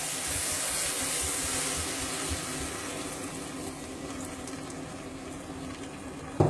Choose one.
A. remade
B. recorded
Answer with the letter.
B